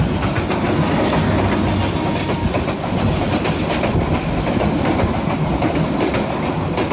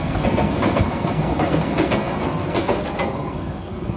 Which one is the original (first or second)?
first